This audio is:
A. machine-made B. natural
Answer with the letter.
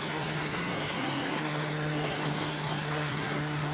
A